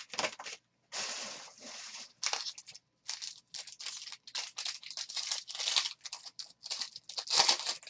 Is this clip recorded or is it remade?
recorded